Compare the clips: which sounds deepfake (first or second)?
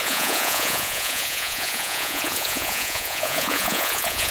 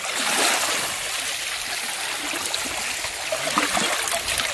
first